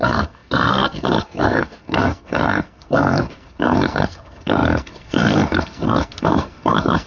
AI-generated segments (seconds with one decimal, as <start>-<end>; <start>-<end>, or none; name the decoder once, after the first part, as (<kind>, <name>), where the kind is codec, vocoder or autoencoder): 0.0-7.1 (codec, SNAC)